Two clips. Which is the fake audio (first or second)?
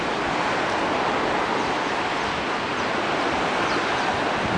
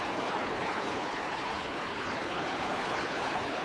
second